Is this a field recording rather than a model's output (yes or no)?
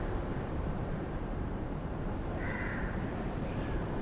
no